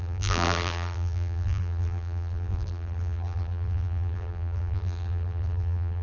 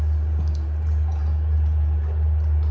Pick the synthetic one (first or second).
first